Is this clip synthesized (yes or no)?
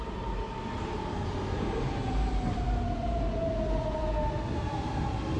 no